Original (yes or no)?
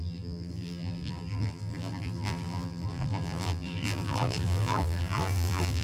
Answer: no